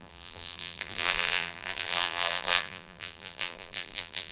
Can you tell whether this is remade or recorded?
remade